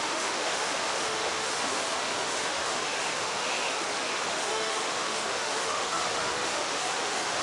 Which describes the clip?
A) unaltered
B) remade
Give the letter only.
B